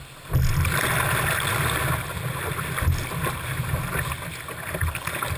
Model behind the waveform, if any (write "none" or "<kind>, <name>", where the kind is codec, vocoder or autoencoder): none